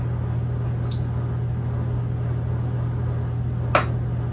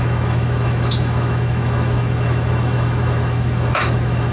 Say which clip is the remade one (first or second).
second